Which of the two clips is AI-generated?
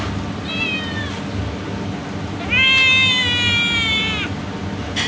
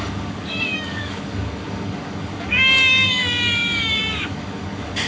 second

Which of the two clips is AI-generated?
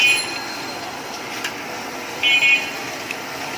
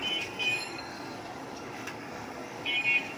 second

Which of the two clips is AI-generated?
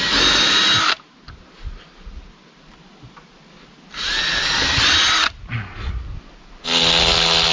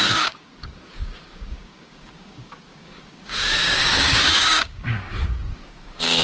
second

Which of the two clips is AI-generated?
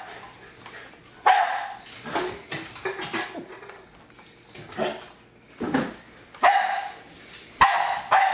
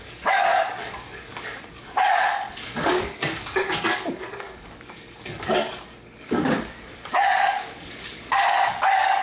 second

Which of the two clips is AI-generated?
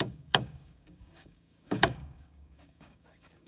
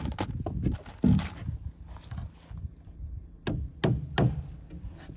first